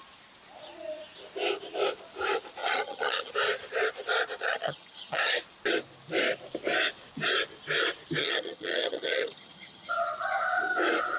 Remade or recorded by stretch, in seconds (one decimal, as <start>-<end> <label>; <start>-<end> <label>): 0.0-2.6 recorded; 2.6-3.3 remade; 3.3-4.4 recorded; 4.4-5.3 remade; 5.3-8.2 recorded; 8.2-9.9 remade; 9.9-11.2 recorded